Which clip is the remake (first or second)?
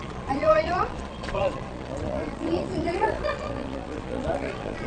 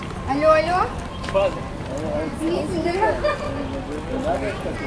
first